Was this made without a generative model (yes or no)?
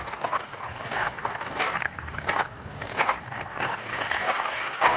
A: no